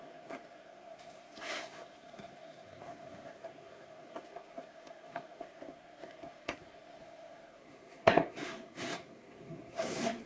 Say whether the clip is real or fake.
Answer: fake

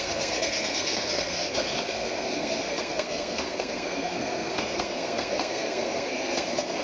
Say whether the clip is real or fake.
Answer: fake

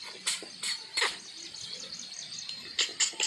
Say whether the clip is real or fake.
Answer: real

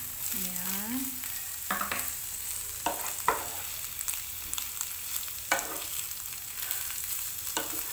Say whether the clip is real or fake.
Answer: real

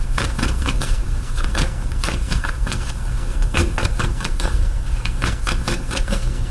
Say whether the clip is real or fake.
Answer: fake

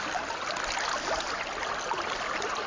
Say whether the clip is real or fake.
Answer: real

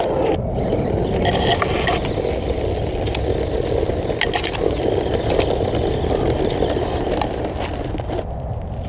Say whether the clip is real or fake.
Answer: real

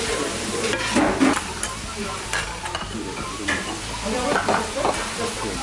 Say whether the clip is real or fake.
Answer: real